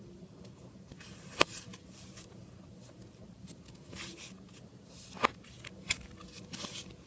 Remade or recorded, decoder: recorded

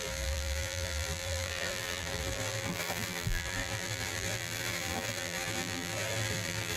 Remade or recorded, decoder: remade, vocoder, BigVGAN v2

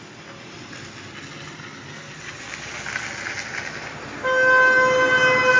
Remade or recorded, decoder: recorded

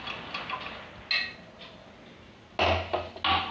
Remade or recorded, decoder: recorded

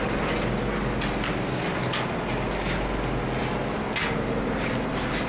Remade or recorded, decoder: recorded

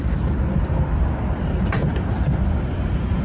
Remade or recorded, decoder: remade, vocoder, BigVGAN v2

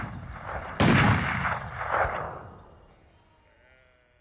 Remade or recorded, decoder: recorded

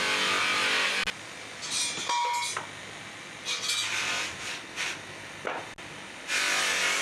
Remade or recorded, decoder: recorded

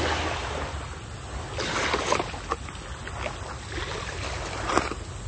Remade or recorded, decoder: recorded